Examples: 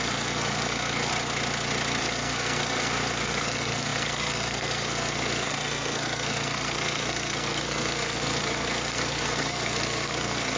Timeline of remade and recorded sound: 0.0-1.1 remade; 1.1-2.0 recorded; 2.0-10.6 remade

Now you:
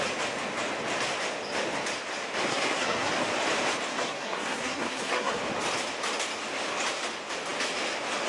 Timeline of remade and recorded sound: 0.0-2.5 recorded; 2.5-3.1 remade; 3.1-3.9 recorded; 3.9-5.4 remade; 5.4-8.3 recorded

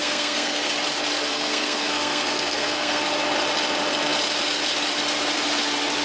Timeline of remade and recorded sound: 0.0-0.7 remade; 0.7-1.3 recorded; 1.3-3.0 remade; 3.0-6.0 recorded